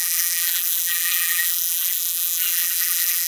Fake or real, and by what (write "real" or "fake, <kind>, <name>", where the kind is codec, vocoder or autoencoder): fake, vocoder, BigVGAN v2